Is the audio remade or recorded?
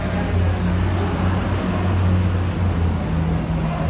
recorded